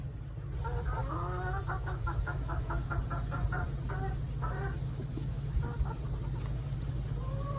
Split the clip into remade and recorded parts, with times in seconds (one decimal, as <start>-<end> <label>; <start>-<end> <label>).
0.0-1.0 recorded; 1.0-2.9 remade; 2.9-4.4 recorded; 4.4-5.6 remade; 5.6-7.6 recorded